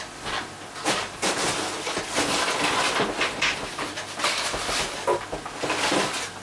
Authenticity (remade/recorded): recorded